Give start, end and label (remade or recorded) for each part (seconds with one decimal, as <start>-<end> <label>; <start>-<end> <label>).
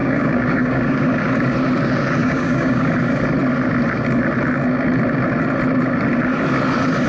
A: 0.0-1.0 remade; 1.0-2.2 recorded; 2.2-2.9 remade; 2.9-7.1 recorded